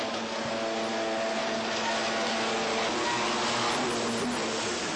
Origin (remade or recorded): recorded